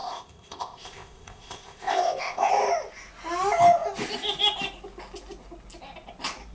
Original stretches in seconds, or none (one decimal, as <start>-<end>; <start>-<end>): 2.5-6.5